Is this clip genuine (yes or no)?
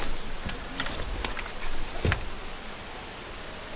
yes